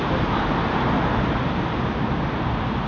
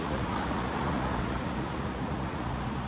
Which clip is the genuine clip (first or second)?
first